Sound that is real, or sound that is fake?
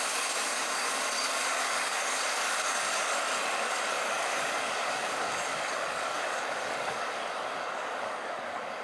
fake